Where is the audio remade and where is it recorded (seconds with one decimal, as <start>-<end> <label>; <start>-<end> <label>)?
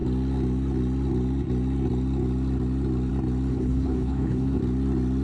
0.0-3.5 recorded; 3.5-4.6 remade; 4.6-5.2 recorded